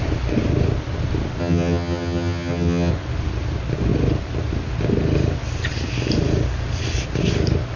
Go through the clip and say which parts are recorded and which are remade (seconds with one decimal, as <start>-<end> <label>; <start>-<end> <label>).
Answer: 0.0-1.4 recorded; 1.4-2.9 remade; 2.9-7.8 recorded